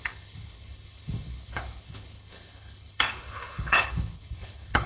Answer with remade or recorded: remade